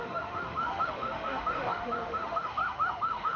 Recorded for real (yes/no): no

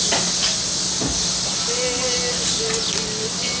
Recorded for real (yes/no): yes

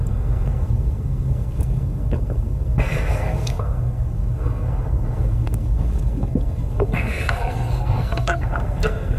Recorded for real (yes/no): no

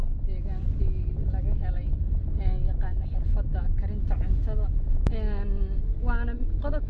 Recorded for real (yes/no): yes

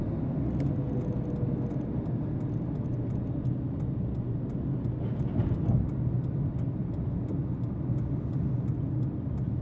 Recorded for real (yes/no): yes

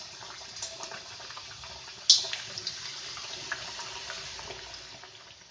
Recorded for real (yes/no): yes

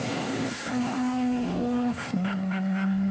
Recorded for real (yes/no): no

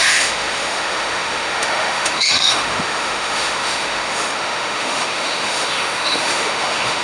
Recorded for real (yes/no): no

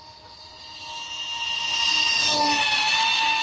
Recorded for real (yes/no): yes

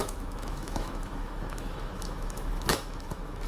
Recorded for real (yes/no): no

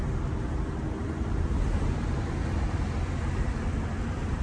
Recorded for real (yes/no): yes